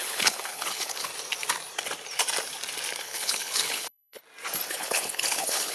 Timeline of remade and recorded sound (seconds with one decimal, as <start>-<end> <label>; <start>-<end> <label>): 0.0-1.1 remade; 1.1-3.0 recorded; 3.0-4.2 remade; 4.2-4.7 recorded; 4.7-5.7 remade